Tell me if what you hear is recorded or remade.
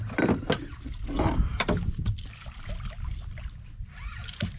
recorded